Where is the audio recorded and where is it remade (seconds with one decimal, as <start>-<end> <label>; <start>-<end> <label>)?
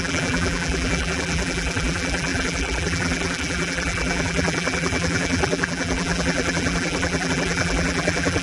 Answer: 0.0-8.4 remade